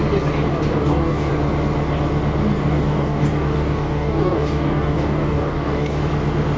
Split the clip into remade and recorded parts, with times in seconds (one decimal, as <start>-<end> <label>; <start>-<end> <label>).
0.0-0.5 recorded; 0.5-1.3 remade; 1.3-2.6 recorded; 2.6-6.0 remade; 6.0-6.6 recorded